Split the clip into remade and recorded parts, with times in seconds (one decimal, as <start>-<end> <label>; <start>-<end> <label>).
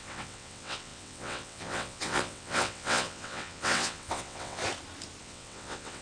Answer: 0.0-4.6 remade; 4.6-5.2 recorded; 5.2-6.0 remade